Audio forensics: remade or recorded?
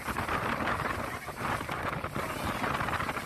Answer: recorded